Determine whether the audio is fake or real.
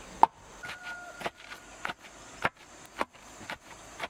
real